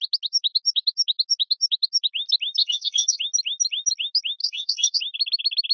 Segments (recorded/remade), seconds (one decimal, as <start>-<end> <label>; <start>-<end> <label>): 0.0-2.6 recorded; 2.6-3.2 remade; 3.2-4.4 recorded; 4.4-5.0 remade; 5.0-5.7 recorded